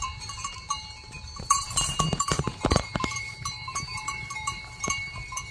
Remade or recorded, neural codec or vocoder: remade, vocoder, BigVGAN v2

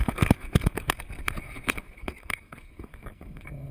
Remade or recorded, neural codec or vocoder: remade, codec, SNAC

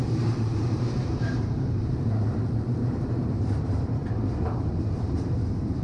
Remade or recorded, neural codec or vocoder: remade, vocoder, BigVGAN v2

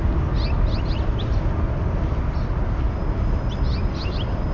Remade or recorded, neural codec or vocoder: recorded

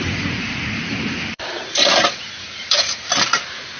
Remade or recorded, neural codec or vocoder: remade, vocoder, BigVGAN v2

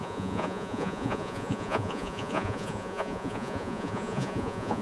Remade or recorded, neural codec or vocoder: remade, vocoder, Vocos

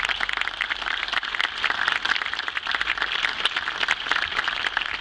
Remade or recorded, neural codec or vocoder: recorded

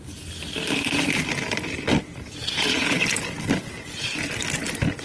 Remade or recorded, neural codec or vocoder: recorded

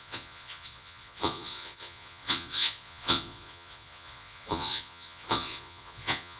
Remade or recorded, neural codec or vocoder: remade, vocoder, Vocos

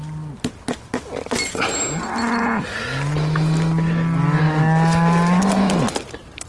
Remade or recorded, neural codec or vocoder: recorded